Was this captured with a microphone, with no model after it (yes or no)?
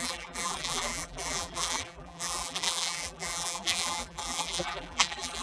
no